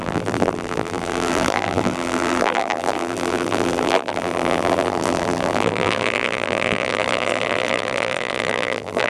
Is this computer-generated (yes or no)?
yes